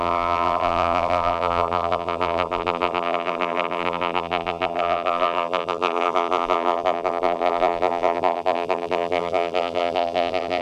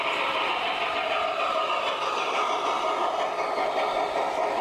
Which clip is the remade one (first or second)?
first